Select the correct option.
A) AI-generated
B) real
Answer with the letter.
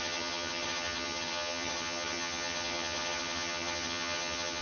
A